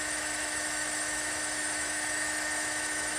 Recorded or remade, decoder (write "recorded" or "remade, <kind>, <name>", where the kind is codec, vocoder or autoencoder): remade, autoencoder, DAC-VAE